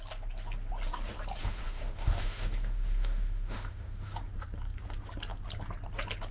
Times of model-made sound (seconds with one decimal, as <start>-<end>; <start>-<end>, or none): 1.4-4.2